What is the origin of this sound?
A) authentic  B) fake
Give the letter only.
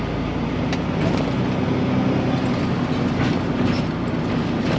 A